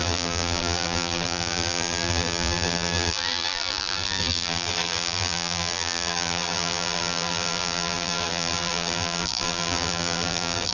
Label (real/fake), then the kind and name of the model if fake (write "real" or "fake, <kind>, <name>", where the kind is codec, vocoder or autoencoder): fake, vocoder, BigVGAN v2